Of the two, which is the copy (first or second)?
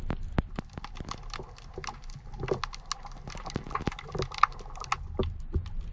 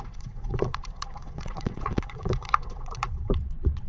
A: second